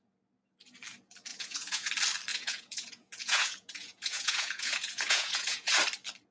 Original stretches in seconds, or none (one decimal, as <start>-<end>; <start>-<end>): 0.0-1.3; 1.9-2.3; 5.7-6.3